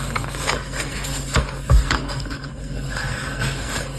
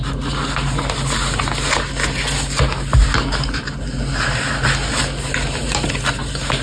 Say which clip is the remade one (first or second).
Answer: first